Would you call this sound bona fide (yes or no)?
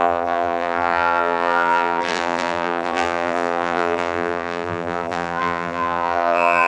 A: no